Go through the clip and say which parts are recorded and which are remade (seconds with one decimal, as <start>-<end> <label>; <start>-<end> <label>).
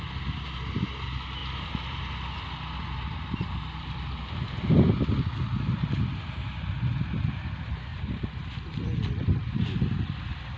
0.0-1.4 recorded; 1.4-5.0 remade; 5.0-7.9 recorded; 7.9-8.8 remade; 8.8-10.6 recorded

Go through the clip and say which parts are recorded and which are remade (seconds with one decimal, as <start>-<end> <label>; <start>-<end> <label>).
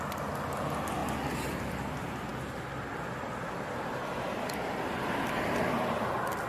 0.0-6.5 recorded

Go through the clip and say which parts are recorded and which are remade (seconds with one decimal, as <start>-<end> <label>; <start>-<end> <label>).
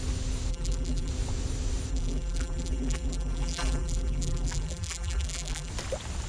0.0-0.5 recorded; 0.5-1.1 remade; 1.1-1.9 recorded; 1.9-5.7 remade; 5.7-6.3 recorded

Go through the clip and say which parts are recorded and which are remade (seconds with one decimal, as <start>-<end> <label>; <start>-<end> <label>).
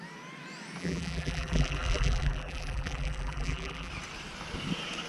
0.0-0.8 recorded; 0.8-3.9 remade; 3.9-5.1 recorded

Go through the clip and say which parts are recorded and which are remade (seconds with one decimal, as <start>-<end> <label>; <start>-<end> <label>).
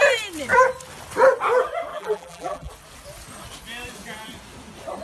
0.0-1.9 recorded; 1.9-2.7 remade; 2.7-5.0 recorded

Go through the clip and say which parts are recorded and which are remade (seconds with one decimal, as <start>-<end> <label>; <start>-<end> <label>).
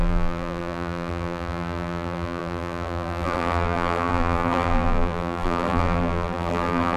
0.0-7.0 remade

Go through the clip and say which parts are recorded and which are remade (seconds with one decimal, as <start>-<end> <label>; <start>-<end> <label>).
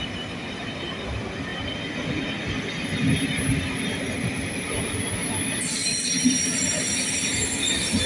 0.0-5.8 recorded; 5.8-8.1 remade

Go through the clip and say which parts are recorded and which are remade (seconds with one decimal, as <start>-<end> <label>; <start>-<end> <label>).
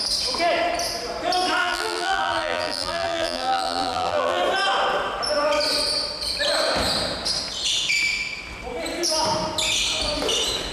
0.0-1.6 recorded; 1.6-4.4 remade; 4.4-10.7 recorded